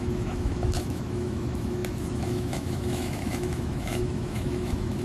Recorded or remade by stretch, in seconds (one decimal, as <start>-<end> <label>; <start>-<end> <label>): 0.0-5.0 remade